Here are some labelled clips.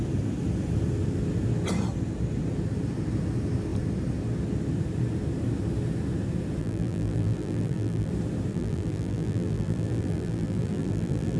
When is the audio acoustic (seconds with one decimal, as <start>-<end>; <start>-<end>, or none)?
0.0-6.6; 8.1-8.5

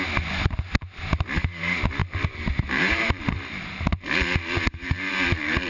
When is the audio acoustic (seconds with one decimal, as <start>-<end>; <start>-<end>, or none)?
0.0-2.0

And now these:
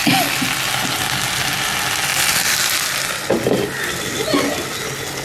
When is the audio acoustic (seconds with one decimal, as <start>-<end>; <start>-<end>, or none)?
0.0-2.1; 4.2-5.2

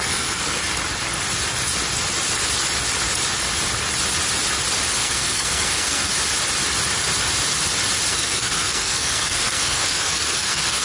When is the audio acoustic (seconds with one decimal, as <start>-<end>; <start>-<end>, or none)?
0.6-5.0; 6.1-8.1

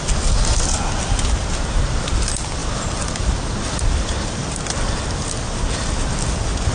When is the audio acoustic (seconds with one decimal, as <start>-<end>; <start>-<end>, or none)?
0.0-6.7